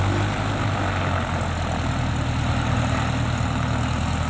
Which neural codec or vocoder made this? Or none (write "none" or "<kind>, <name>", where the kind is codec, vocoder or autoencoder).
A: none